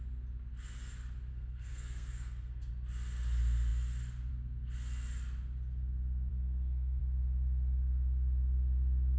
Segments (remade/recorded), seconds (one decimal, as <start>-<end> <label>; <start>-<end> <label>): 0.0-1.3 recorded; 1.3-2.7 remade; 2.7-6.3 recorded; 6.3-7.0 remade; 7.0-9.2 recorded